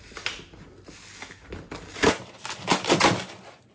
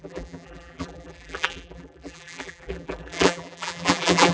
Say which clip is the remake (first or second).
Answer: second